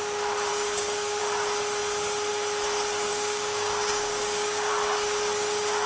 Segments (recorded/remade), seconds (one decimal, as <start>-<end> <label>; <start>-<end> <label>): 0.0-0.5 recorded; 0.5-1.2 remade; 1.2-3.1 recorded; 3.1-4.7 remade; 4.7-5.9 recorded